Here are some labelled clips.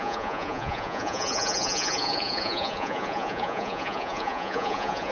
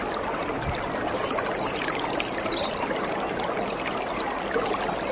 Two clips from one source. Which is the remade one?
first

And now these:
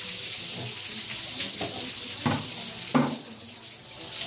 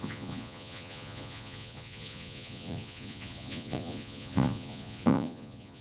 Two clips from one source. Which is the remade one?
second